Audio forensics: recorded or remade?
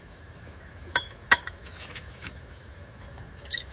remade